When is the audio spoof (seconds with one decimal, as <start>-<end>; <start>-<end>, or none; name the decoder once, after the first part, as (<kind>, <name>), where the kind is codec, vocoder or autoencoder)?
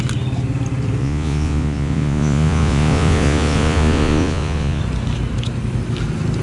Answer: 1.0-4.8 (vocoder, Vocos)